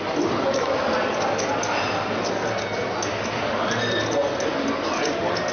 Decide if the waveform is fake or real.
real